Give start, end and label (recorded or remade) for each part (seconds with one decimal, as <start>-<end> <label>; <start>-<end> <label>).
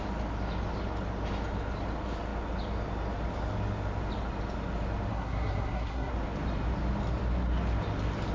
0.0-5.1 recorded; 5.1-6.1 remade; 6.1-8.3 recorded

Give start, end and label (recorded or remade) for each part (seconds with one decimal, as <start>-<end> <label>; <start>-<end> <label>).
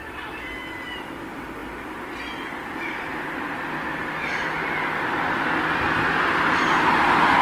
0.0-7.4 recorded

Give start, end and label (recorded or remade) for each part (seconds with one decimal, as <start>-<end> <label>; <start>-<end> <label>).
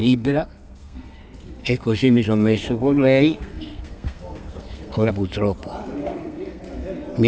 0.0-1.2 remade; 1.2-1.6 recorded; 1.6-5.1 remade; 5.1-6.0 recorded; 6.0-6.6 remade; 6.6-7.3 recorded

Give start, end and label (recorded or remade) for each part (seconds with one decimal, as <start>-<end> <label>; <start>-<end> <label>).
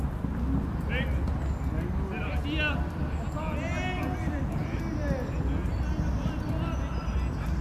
0.0-7.6 recorded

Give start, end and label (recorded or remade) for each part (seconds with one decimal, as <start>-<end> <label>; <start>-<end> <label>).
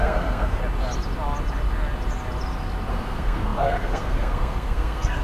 0.0-0.6 remade; 0.6-2.9 recorded; 2.9-5.2 remade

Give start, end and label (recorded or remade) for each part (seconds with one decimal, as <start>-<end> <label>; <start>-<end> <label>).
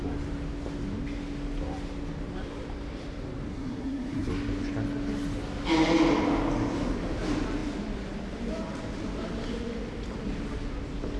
0.0-3.5 recorded; 3.5-4.3 remade; 4.3-11.2 recorded